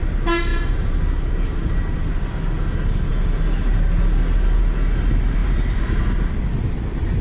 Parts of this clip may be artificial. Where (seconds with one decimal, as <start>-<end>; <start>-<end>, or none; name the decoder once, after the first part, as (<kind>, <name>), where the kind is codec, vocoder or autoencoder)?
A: 5.4-6.3 (vocoder, BigVGAN v2)